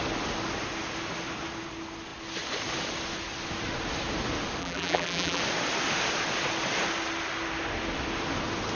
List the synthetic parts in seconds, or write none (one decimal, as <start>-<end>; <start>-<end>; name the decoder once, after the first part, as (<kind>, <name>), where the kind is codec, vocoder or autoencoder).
4.6-5.4 (vocoder, BigVGAN v2)